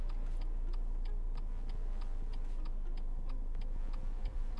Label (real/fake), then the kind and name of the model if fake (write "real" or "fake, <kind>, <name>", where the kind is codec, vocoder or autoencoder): real